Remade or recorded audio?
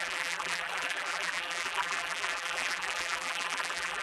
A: remade